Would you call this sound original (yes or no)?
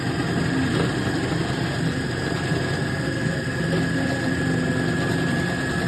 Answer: yes